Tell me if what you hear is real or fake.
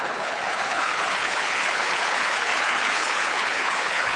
fake